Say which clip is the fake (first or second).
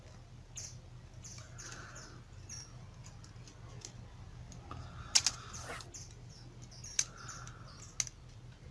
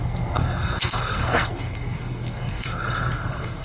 second